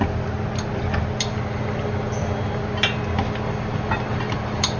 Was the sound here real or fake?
real